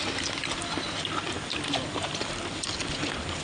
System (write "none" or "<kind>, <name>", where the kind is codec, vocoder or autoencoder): none